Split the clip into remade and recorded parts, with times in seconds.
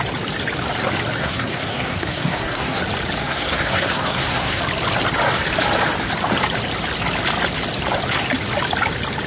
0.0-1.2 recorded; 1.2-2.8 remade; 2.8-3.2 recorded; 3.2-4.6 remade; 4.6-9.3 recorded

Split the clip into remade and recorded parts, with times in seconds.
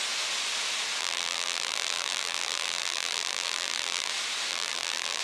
0.0-1.0 recorded; 1.0-4.1 remade; 4.1-4.5 recorded; 4.5-5.2 remade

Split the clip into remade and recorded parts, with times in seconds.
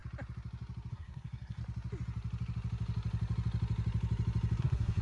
0.0-0.9 recorded; 0.9-1.6 remade; 1.6-4.6 recorded; 4.6-5.0 remade